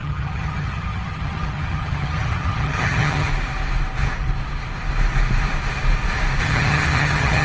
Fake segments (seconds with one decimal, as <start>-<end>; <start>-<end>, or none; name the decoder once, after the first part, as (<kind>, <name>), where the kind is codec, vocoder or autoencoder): 0.0-3.3 (vocoder, HiFi-GAN); 6.4-7.4